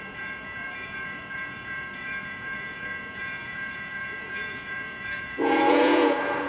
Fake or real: fake